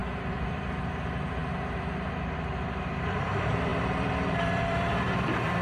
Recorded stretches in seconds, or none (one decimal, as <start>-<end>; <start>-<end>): 1.4-2.8